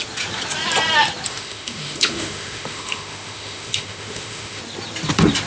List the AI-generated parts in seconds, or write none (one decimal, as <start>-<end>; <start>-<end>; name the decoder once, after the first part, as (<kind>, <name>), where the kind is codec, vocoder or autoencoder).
1.3-4.6 (autoencoder, DAC-VAE)